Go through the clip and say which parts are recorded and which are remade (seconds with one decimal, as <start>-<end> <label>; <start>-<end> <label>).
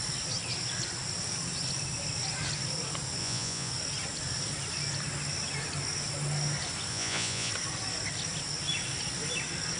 0.0-3.2 recorded; 3.2-3.7 remade; 3.7-6.9 recorded; 6.9-7.5 remade; 7.5-9.8 recorded